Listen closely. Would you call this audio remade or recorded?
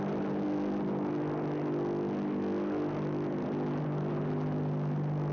recorded